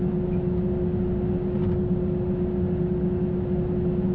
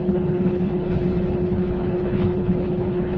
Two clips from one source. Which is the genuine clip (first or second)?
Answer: first